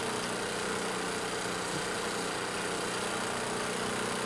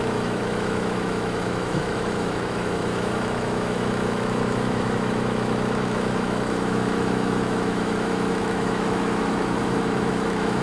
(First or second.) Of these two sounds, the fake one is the second